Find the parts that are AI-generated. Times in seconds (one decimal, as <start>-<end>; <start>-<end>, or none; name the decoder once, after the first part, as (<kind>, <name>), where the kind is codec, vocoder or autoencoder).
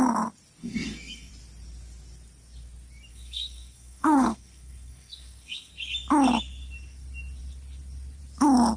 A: 0.6-1.3 (codec, SNAC); 3.1-5.7